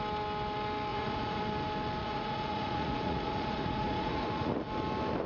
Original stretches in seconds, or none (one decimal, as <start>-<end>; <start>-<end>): 0.0-0.9; 1.4-2.0; 4.7-5.3